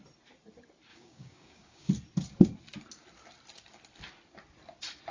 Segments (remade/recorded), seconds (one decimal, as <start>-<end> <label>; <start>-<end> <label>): 0.0-0.9 recorded; 0.9-1.9 remade; 1.9-5.1 recorded